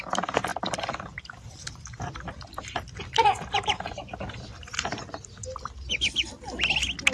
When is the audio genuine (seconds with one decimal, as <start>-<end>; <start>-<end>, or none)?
0.0-0.5; 4.8-7.1